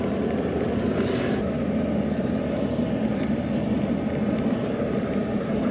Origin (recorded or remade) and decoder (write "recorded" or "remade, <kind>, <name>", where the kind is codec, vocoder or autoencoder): recorded